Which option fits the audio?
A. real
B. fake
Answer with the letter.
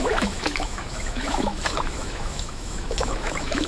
B